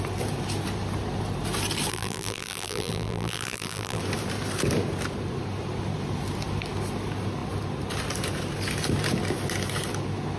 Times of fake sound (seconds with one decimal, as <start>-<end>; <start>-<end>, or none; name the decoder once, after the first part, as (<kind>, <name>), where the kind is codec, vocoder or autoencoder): 1.9-4.0 (vocoder, BigVGAN v2)